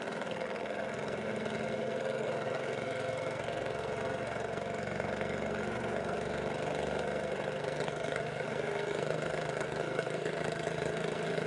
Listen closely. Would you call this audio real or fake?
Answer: fake